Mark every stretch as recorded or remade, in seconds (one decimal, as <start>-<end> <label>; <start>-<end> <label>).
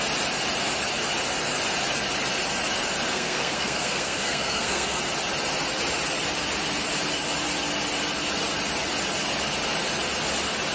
0.0-3.1 recorded; 3.1-5.0 remade; 5.0-10.7 recorded